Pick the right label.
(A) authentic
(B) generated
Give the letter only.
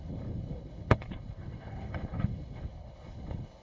B